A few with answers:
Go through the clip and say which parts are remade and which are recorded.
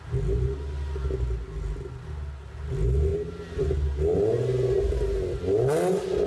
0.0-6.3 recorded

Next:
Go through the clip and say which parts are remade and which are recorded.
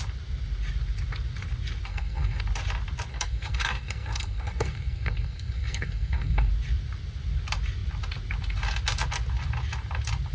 0.0-1.9 recorded; 1.9-2.4 remade; 2.4-3.1 recorded; 3.1-6.5 remade; 6.5-10.3 recorded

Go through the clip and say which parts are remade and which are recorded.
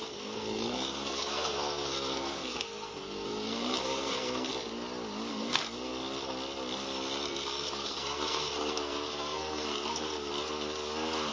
0.0-4.5 remade; 4.5-5.3 recorded; 5.3-5.9 remade; 5.9-7.3 recorded; 7.3-10.3 remade; 10.3-11.3 recorded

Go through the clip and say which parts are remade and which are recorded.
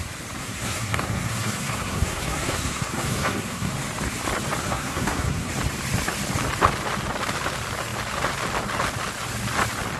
0.0-0.4 recorded; 0.4-3.7 remade; 3.7-4.6 recorded; 4.6-5.5 remade; 5.5-10.0 recorded